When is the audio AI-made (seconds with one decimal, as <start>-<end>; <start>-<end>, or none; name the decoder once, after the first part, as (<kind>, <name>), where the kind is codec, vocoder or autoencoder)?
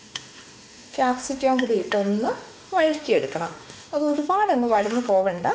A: 0.0-5.5 (autoencoder, DAC-VAE)